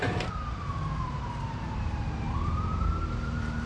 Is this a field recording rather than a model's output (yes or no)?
no